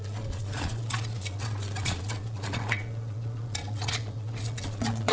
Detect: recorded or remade remade